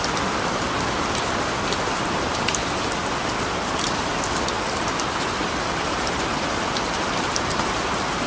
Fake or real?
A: real